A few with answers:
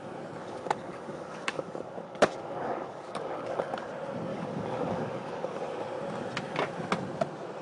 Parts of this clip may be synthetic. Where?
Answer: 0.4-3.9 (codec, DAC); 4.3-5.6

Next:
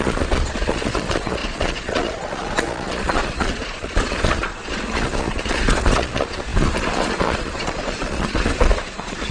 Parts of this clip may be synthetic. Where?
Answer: 0.0-9.3 (vocoder, Vocos)

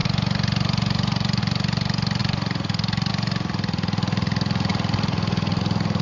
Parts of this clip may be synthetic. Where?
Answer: 4.7-5.6 (vocoder, BigVGAN v2)

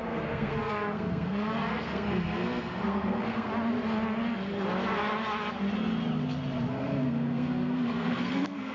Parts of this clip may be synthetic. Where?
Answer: 0.0-3.5 (codec, SNAC); 6.7-8.7

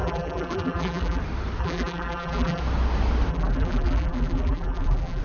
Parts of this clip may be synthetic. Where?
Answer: 0.0-1.2 (vocoder, BigVGAN v2); 1.6-2.6; 3.3-5.2

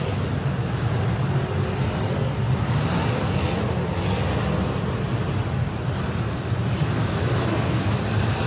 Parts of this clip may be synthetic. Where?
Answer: 7.0-8.0 (autoencoder, DAC-VAE)

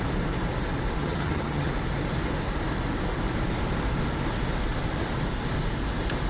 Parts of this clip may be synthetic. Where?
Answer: 1.0-1.7 (vocoder, HiFi-GAN)